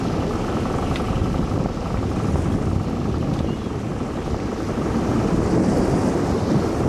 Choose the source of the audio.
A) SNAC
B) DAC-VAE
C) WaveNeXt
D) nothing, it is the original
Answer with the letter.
D